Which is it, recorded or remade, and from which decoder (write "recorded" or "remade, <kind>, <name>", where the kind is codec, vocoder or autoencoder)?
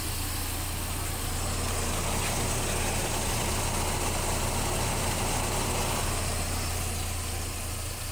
recorded